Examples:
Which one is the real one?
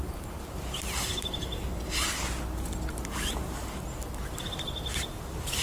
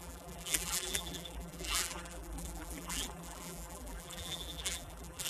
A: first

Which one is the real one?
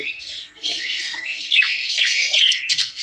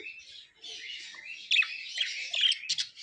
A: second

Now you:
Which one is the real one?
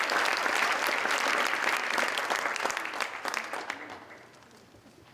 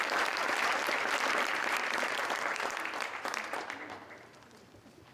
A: first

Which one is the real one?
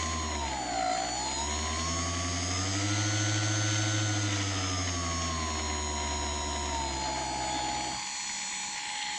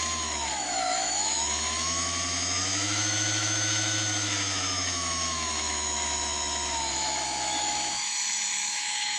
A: first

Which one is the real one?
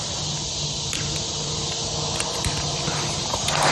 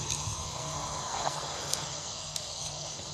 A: first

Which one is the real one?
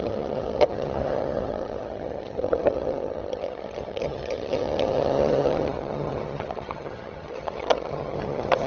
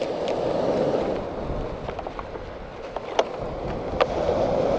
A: second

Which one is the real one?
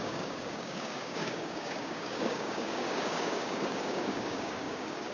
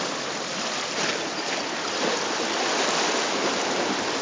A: second